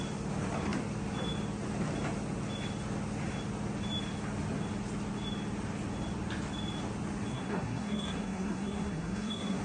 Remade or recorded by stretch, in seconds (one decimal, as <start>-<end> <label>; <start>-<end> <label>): 0.0-7.3 recorded; 7.3-9.6 remade

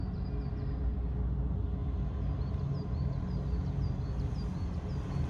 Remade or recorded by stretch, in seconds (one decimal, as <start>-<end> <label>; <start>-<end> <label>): 0.0-5.3 recorded